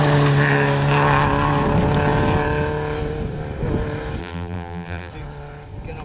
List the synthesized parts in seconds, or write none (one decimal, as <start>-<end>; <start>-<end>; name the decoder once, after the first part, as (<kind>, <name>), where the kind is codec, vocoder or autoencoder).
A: 4.2-5.1 (vocoder, BigVGAN v2)